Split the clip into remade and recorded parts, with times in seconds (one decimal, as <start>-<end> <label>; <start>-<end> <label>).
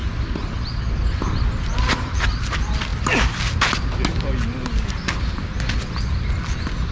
0.0-6.9 recorded